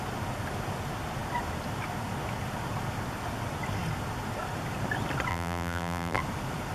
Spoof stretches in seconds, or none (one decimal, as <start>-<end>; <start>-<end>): 5.3-6.2